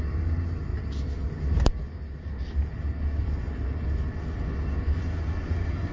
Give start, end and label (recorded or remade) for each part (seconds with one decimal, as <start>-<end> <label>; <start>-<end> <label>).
0.0-5.9 recorded